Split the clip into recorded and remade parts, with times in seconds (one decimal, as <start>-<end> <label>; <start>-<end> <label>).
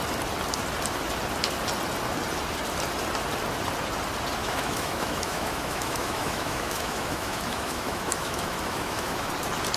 0.0-4.4 recorded; 4.4-9.3 remade; 9.3-9.8 recorded